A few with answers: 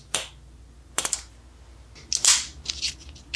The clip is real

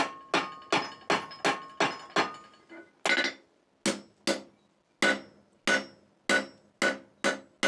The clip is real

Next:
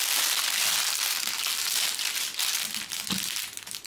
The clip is real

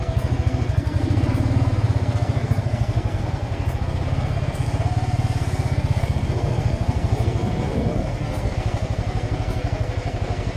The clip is fake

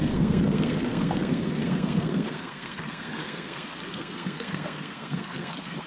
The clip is fake